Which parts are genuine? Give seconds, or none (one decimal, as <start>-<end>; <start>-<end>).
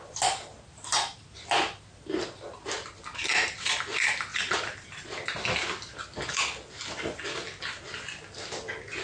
0.0-9.0